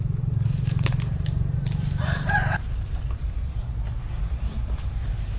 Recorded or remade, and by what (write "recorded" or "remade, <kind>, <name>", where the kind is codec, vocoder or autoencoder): remade, vocoder, BigVGAN v2